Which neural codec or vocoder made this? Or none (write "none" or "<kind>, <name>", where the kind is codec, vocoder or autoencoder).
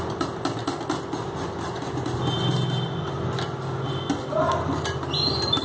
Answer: none